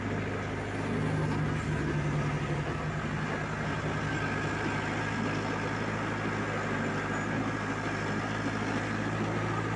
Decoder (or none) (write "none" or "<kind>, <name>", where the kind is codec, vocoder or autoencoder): none